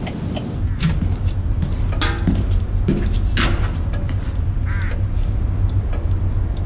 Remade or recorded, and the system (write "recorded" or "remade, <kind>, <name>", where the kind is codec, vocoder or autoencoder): recorded